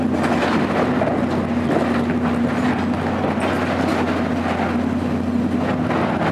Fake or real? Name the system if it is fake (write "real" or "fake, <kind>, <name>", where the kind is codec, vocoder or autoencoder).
real